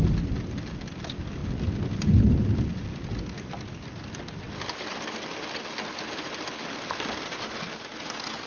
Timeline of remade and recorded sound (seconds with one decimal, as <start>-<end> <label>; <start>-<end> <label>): 0.0-8.5 recorded